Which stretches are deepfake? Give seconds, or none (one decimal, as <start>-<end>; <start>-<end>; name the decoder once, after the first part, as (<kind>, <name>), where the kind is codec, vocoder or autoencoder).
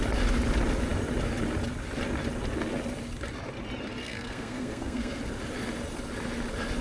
4.0-5.2 (codec, SNAC)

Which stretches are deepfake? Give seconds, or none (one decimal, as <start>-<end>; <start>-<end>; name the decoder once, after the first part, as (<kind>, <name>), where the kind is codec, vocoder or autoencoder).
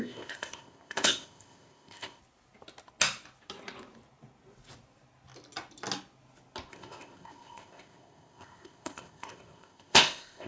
0.0-2.2 (codec, ZipCodec); 6.7-10.5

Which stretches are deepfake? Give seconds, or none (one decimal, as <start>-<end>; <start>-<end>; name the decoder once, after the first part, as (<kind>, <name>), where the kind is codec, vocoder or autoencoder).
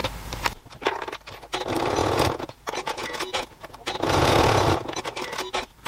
2.0-5.0 (vocoder, Vocos)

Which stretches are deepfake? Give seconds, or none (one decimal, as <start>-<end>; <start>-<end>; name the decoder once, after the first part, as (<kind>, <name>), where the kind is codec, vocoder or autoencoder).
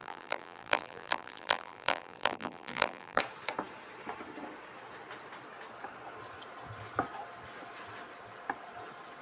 0.0-3.2 (vocoder, BigVGAN v2)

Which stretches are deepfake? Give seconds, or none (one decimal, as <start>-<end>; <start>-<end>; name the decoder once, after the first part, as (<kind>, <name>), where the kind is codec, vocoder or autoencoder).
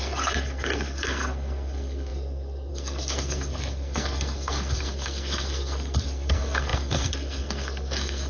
0.0-8.3 (codec, SNAC)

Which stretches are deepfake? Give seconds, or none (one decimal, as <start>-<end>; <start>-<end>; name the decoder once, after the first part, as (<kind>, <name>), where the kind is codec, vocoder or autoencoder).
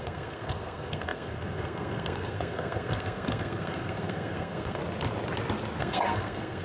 0.0-4.8 (codec, SNAC); 5.8-6.6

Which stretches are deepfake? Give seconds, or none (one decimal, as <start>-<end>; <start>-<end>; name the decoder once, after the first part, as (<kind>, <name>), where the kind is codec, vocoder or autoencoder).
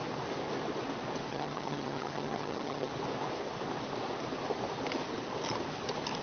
1.3-2.9 (vocoder, HiFi-GAN)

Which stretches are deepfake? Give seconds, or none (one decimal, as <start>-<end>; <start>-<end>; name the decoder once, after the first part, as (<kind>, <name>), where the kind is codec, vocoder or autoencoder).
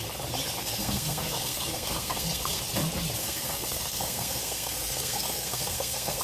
0.6-2.6 (codec, SNAC); 3.2-6.2